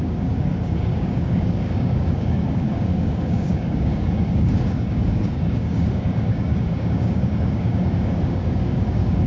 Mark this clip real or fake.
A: fake